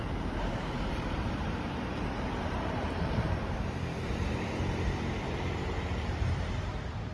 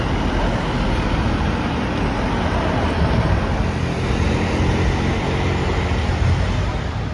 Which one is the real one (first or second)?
second